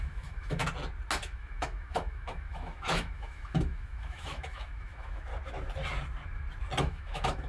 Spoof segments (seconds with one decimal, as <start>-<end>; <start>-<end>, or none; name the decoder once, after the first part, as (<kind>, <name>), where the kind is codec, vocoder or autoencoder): 0.0-0.6 (autoencoder, DAC-VAE); 1.2-5.3; 6.8-7.5